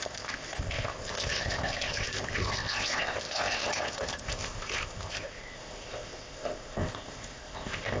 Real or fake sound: fake